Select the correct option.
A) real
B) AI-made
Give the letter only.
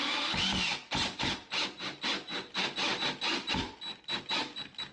A